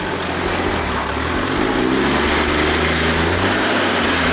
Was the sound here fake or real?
real